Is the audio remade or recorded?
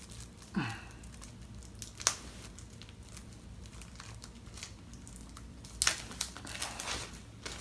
recorded